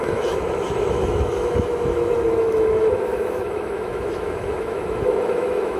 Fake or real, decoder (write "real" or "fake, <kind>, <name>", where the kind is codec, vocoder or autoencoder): fake, autoencoder, DAC-VAE